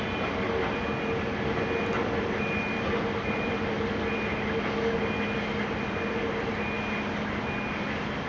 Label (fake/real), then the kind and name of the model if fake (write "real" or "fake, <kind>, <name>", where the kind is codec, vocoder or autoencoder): real